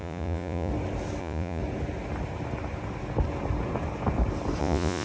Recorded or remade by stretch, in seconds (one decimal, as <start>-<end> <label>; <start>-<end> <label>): 0.0-0.7 remade; 0.7-1.2 recorded; 1.2-1.6 remade; 1.6-4.6 recorded; 4.6-5.0 remade